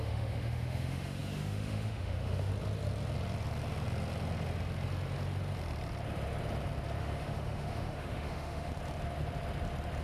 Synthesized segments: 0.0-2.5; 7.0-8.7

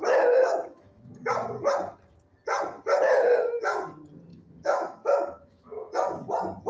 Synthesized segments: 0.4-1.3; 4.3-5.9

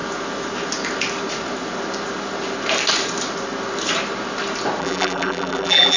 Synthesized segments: 4.8-6.0

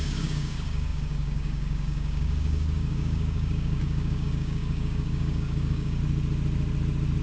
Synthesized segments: 0.0-6.0

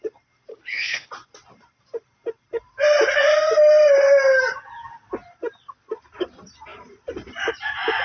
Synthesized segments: 0.5-1.1

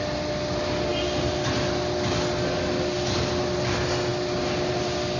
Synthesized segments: none